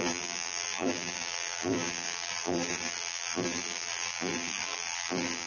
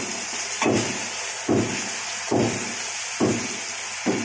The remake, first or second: first